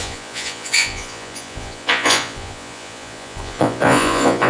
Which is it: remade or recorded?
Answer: remade